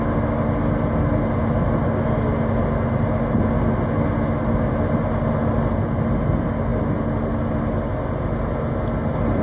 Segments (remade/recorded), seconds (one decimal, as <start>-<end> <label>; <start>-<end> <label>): 0.0-9.4 recorded